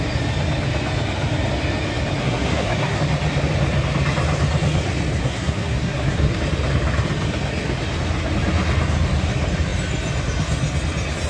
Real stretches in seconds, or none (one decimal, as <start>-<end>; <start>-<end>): 0.0-2.2; 3.0-5.2; 6.4-11.3